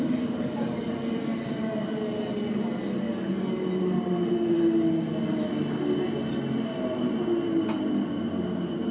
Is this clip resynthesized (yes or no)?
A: no